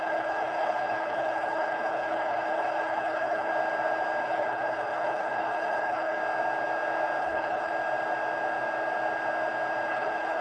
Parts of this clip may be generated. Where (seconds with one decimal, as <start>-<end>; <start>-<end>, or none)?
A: 0.0-3.5; 4.2-6.2; 7.2-7.7; 9.9-10.4